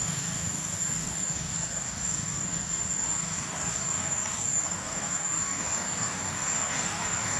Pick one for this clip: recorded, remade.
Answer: remade